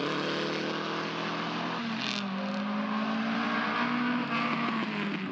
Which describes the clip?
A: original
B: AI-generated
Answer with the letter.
A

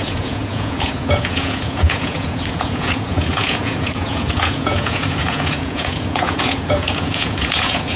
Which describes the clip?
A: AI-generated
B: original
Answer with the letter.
A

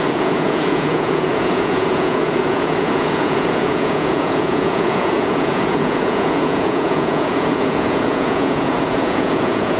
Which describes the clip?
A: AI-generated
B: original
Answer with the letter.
A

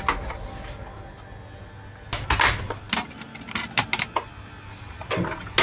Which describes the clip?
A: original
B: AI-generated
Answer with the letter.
A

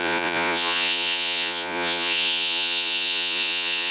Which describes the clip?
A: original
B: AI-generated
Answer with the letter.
B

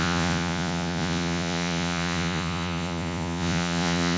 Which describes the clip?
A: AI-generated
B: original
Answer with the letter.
A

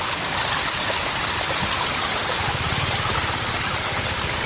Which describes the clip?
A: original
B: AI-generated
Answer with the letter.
A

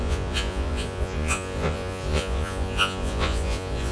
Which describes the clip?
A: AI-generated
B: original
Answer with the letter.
A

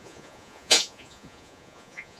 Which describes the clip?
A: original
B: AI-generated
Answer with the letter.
B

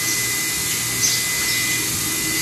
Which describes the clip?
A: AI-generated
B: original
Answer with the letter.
B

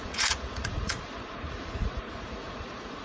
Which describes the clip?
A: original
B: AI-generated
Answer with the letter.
B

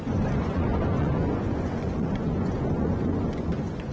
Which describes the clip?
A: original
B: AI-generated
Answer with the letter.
B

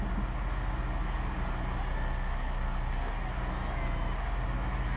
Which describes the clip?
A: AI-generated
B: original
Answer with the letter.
B